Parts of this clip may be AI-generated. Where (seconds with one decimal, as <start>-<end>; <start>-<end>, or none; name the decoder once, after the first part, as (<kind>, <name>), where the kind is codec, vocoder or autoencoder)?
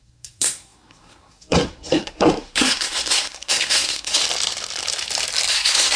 0.0-4.2 (codec, SNAC); 5.5-6.0